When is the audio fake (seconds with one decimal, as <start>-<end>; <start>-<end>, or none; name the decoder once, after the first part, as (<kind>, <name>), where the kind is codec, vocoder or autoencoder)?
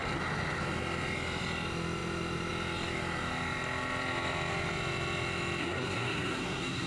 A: 5.6-6.9 (codec, SNAC)